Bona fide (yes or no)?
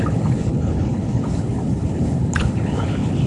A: no